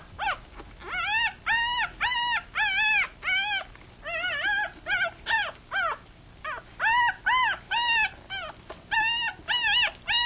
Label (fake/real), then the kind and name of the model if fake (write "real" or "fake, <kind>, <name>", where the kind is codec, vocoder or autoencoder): real